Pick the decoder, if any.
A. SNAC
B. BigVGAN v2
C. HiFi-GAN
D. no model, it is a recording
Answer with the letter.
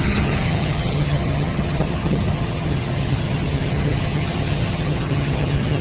C